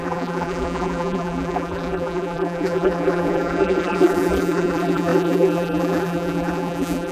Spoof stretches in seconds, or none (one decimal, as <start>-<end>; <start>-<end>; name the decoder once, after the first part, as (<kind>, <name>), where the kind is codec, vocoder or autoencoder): 0.0-7.1 (vocoder, BigVGAN v2)